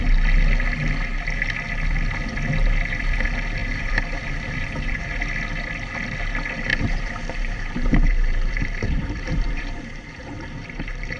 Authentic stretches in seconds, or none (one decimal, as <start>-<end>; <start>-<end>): 0.0-3.6; 5.2-6.7